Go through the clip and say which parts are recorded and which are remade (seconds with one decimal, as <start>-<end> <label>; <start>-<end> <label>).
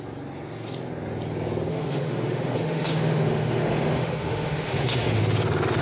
0.0-1.7 recorded; 1.7-5.2 remade; 5.2-5.8 recorded